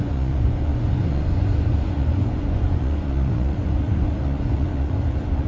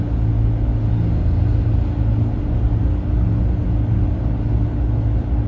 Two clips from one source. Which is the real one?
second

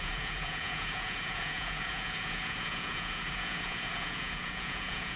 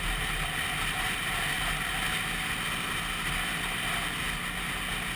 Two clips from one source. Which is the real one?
second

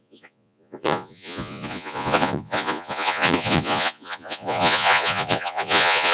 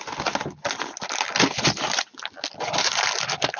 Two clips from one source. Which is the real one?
second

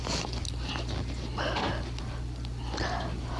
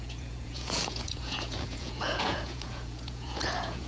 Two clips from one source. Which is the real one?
first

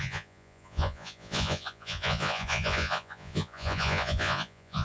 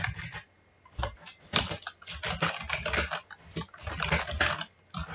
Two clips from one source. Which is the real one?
second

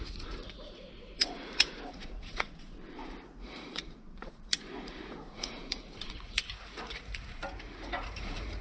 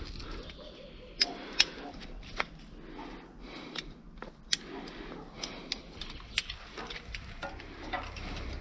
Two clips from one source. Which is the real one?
second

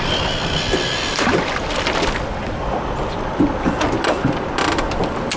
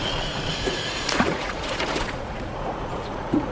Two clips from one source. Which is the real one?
first